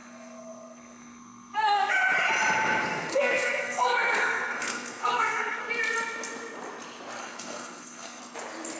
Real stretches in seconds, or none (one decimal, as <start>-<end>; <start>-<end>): 1.9-2.9; 5.6-7.2; 8.2-8.8